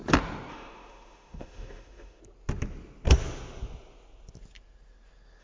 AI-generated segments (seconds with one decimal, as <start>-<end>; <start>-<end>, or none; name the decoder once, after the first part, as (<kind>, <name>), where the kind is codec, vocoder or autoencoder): 0.5-2.2 (autoencoder, DAC-VAE)